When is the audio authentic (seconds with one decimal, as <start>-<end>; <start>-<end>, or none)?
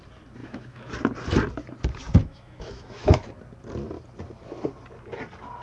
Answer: 0.0-0.4; 0.9-2.2; 3.3-5.6